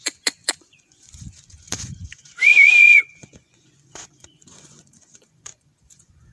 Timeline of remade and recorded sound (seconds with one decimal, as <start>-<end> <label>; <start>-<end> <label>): 0.0-6.3 remade